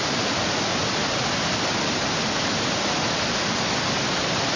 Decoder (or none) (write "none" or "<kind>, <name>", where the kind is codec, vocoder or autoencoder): none